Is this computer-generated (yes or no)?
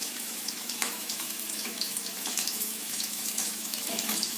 yes